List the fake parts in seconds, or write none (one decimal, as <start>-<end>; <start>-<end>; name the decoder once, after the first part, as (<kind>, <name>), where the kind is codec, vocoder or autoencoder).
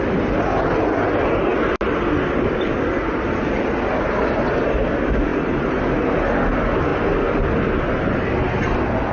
none